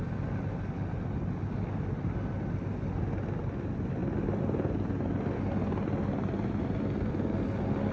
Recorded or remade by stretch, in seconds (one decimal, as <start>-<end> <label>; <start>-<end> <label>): 0.0-7.9 recorded